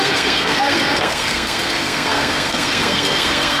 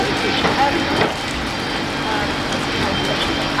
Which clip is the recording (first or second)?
second